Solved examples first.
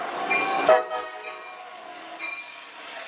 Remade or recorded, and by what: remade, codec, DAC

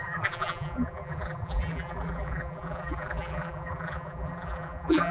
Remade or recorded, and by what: remade, vocoder, BigVGAN v2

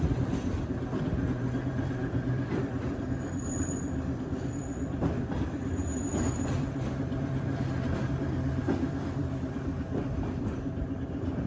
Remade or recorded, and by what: remade, vocoder, BigVGAN v2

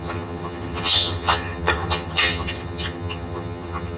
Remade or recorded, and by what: remade, vocoder, HiFi-GAN